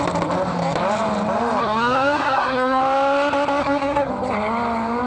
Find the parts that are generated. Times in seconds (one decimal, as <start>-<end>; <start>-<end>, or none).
1.6-2.8; 3.6-4.1